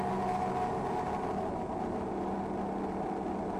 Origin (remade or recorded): recorded